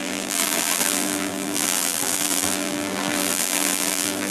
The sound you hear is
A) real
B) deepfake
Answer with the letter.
B